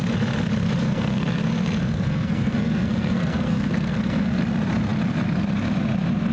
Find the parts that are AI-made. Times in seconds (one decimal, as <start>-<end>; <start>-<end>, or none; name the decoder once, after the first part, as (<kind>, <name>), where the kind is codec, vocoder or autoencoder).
0.8-4.4 (codec, SNAC)